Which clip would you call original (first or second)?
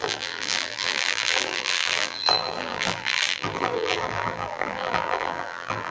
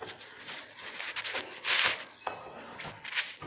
second